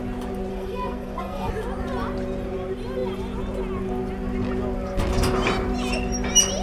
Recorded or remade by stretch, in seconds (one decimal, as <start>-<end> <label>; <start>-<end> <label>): 0.0-0.5 recorded; 0.5-1.5 remade; 1.5-6.6 recorded